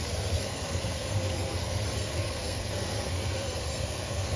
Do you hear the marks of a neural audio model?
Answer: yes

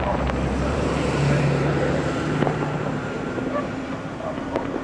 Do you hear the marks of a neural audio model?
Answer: yes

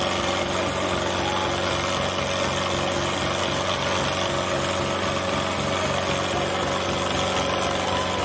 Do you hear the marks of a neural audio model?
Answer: no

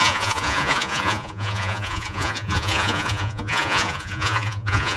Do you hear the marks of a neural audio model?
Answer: yes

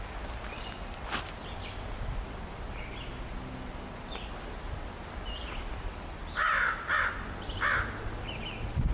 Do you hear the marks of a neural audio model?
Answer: no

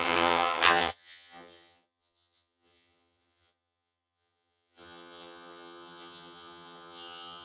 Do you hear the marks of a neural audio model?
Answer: yes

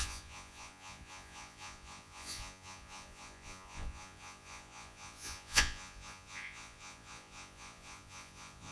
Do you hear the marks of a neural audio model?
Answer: yes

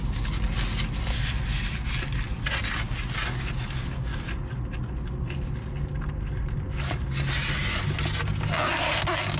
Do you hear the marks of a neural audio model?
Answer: no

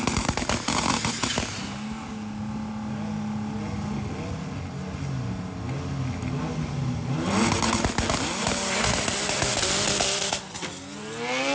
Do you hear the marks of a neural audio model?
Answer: no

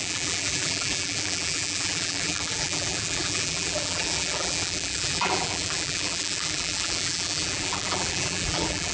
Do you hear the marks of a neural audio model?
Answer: yes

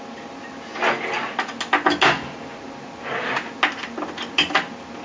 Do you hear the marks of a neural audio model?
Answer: no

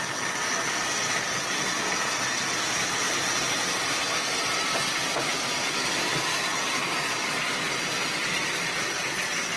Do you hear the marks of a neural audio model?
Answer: no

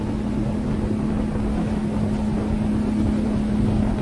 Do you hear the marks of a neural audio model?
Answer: no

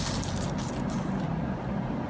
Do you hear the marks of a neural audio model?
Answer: no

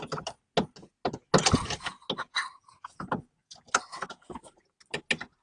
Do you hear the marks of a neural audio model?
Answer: no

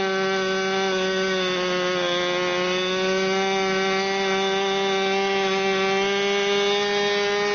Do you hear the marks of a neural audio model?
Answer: no